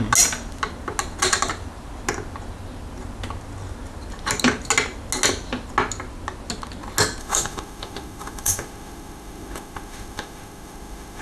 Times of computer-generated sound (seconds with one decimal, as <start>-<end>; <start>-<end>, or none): 7.2-11.2